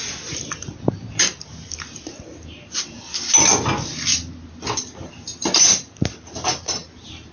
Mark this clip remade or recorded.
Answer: recorded